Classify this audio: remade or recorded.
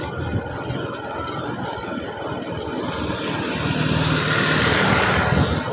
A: recorded